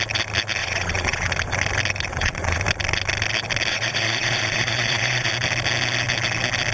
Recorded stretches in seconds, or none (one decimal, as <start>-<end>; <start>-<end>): 0.0-0.6; 1.3-2.1; 2.6-3.7; 5.3-6.7